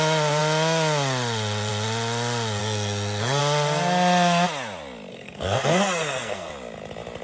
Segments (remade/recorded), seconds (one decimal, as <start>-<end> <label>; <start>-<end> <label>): 0.0-2.6 recorded; 2.6-3.4 remade; 3.4-5.1 recorded; 5.1-6.5 remade; 6.5-7.2 recorded